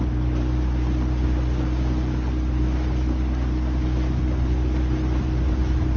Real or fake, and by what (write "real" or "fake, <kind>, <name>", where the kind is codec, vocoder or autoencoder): real